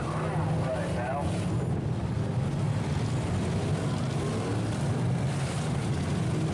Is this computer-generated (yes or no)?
no